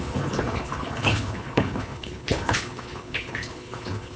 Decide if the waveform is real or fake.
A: fake